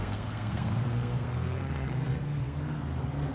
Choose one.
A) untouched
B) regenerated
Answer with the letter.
B